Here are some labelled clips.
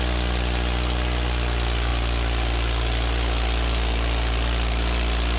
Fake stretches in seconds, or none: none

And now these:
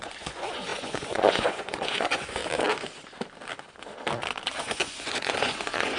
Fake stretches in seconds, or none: 0.0-2.4 (vocoder, Vocos); 4.6-6.0

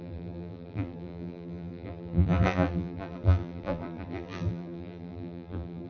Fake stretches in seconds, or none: 0.0-5.9 (vocoder, BigVGAN v2)